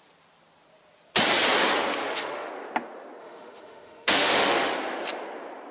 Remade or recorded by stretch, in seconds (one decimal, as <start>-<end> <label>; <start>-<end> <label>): 0.0-2.0 recorded; 2.0-2.5 remade; 2.5-3.2 recorded; 3.2-4.7 remade; 4.7-5.7 recorded